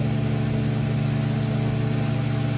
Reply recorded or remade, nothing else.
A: recorded